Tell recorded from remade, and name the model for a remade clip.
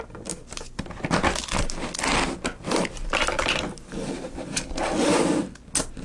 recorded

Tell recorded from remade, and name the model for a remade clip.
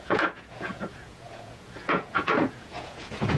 remade, vocoder, Vocos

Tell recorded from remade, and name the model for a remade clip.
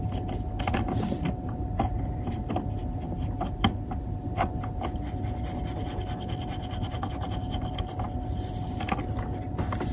recorded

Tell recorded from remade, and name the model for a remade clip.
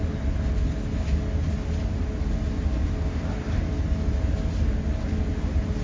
recorded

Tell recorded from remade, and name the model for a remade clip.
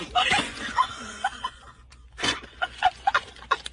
remade, vocoder, Vocos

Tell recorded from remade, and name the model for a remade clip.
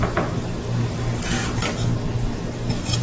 recorded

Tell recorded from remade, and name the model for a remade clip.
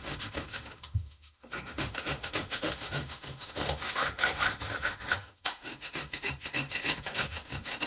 remade, autoencoder, DAC-VAE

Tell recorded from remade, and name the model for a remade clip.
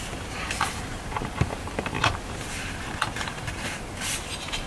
recorded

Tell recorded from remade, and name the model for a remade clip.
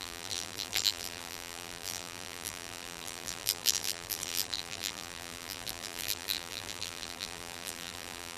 remade, vocoder, BigVGAN v2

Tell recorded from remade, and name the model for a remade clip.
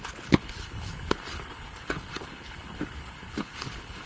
remade, codec, HILCodec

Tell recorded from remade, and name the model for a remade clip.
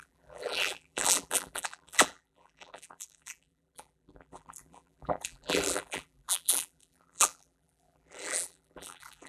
remade, vocoder, BigVGAN v2